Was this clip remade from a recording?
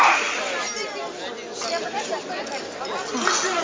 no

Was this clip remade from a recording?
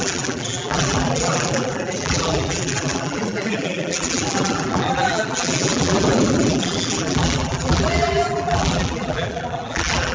yes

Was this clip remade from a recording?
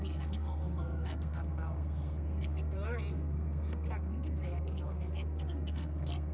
yes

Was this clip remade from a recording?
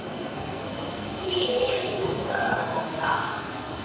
yes